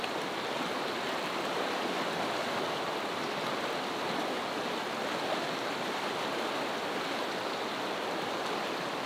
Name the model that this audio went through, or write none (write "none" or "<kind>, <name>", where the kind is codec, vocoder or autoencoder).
none